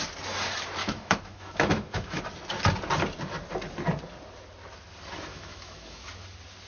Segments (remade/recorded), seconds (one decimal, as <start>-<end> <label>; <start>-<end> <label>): 0.0-0.8 recorded; 0.8-2.2 remade; 2.2-5.3 recorded; 5.3-6.0 remade; 6.0-6.7 recorded